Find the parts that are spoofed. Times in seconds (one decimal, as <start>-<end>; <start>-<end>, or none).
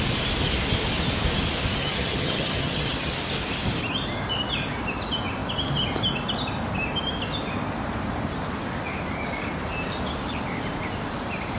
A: 1.8-3.1